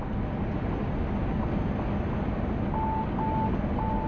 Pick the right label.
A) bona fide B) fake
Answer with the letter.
A